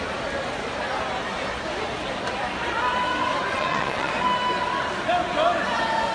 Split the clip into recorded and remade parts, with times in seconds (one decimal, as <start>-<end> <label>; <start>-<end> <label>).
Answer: 0.0-3.5 recorded; 3.5-4.1 remade; 4.1-6.1 recorded